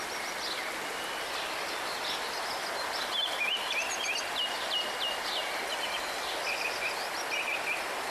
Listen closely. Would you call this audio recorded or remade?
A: recorded